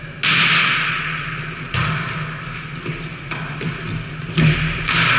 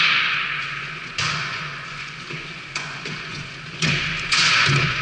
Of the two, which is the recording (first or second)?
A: first